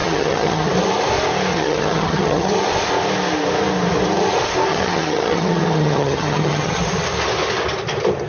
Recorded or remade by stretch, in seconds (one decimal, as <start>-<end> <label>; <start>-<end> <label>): 0.0-0.7 remade; 0.7-1.5 recorded; 1.5-2.5 remade; 2.5-4.7 recorded; 4.7-6.8 remade; 6.8-8.3 recorded